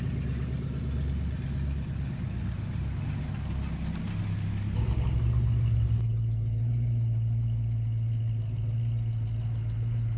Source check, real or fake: real